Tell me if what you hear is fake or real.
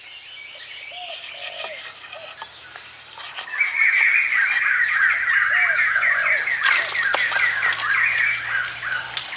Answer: real